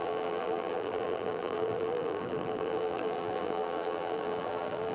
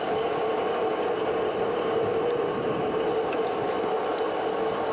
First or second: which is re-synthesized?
first